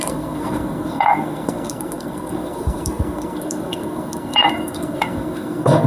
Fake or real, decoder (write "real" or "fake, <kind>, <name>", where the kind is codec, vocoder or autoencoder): fake, codec, SNAC